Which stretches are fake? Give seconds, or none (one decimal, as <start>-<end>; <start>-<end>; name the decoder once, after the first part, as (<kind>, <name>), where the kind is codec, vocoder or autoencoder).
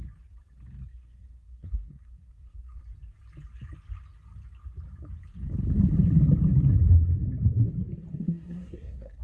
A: 0.9-2.8 (codec, SNAC); 8.1-9.2